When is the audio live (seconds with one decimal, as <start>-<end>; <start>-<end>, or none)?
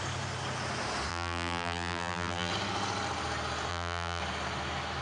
0.0-1.1; 2.5-3.7; 4.2-5.0